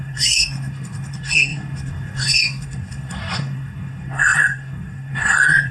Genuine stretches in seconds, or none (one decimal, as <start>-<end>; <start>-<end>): none